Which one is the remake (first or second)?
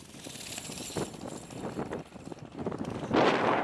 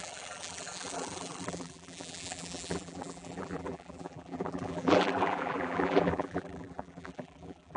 second